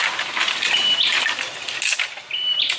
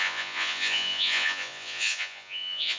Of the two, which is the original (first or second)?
first